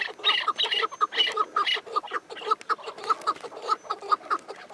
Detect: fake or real real